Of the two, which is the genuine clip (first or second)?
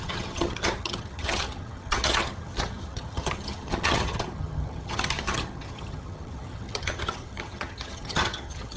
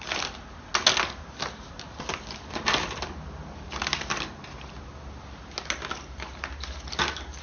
second